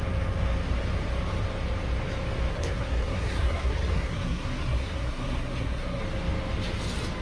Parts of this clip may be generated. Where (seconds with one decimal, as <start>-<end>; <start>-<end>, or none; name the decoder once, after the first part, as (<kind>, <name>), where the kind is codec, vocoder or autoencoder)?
2.5-6.0 (codec, SNAC)